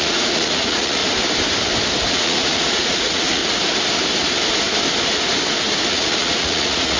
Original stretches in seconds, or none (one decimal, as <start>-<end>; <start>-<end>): 1.0-2.1; 3.4-5.9